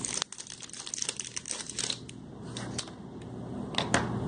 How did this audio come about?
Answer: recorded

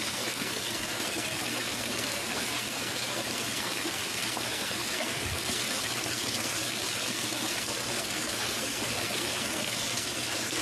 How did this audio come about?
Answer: remade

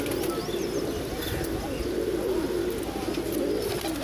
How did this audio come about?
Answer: recorded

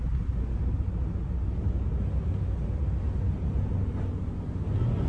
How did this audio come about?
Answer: recorded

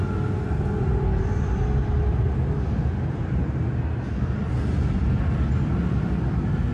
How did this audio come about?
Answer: recorded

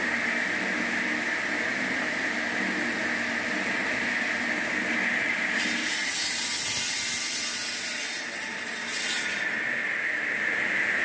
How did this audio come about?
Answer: recorded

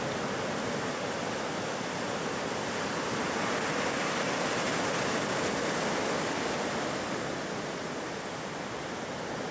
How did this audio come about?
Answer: recorded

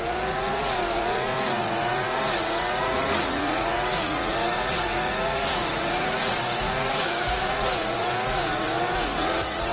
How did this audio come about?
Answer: remade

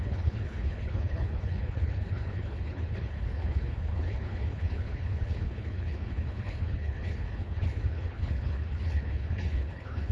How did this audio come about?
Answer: remade